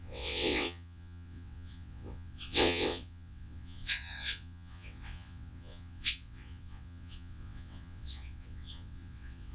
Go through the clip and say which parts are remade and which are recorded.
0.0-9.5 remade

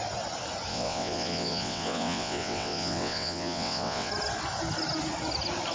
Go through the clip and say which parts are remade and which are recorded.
0.0-0.7 recorded; 0.7-4.1 remade; 4.1-5.7 recorded

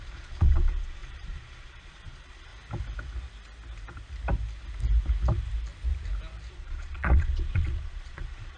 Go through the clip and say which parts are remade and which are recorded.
0.0-2.5 remade; 2.5-6.5 recorded; 6.5-8.6 remade

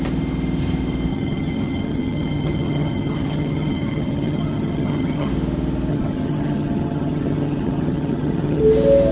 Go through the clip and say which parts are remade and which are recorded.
0.0-1.1 recorded; 1.1-5.3 remade; 5.3-5.9 recorded; 5.9-8.6 remade; 8.6-9.1 recorded

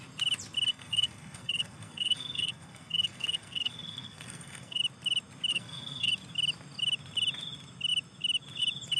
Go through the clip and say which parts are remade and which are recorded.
0.0-0.7 recorded; 0.7-4.8 remade; 4.8-5.5 recorded; 5.5-6.1 remade; 6.1-9.0 recorded